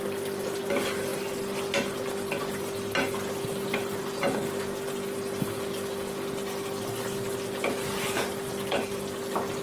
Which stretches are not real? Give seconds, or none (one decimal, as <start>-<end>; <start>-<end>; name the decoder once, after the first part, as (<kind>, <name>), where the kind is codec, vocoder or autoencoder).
none